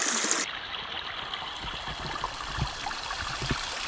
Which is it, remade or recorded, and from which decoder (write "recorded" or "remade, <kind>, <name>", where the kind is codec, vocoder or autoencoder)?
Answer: recorded